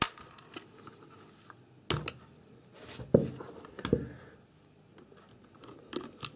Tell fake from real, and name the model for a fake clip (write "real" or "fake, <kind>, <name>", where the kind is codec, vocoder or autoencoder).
real